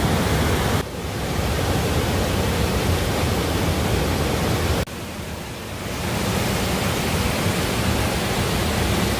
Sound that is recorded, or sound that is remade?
recorded